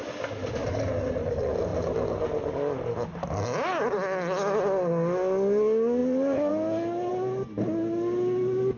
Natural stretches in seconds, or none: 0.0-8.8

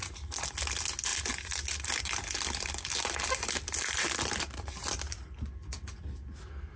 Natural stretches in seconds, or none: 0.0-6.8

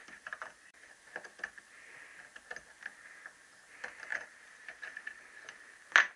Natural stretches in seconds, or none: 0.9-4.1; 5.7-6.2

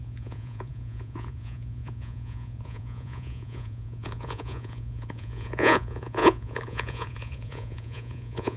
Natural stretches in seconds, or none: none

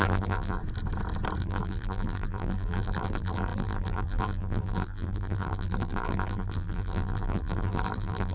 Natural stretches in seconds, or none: 0.6-1.4